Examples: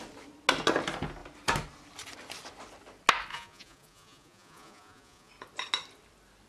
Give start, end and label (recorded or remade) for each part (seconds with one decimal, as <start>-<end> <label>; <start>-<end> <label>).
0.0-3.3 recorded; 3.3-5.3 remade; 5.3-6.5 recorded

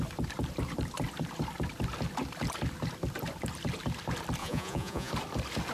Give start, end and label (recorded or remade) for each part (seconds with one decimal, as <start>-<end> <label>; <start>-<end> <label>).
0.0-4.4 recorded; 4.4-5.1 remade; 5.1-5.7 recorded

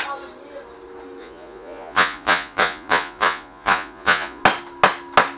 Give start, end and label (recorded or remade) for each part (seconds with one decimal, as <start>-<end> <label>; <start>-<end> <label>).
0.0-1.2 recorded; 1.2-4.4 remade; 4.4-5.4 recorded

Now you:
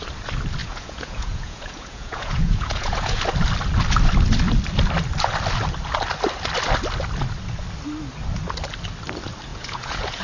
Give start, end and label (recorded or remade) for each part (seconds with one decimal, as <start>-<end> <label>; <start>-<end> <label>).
0.0-0.6 recorded; 0.6-3.2 remade; 3.2-9.5 recorded; 9.5-10.2 remade